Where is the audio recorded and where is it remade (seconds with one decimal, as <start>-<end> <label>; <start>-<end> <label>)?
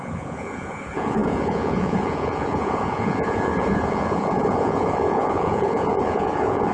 0.0-6.7 remade